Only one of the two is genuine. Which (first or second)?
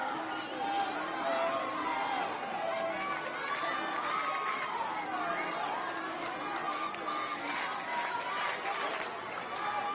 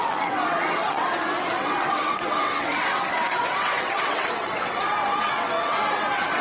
first